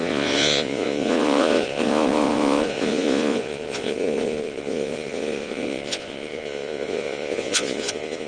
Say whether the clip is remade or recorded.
remade